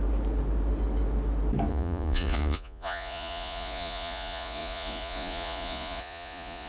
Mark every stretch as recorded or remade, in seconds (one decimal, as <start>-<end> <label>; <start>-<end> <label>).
0.0-1.7 recorded; 1.7-6.7 remade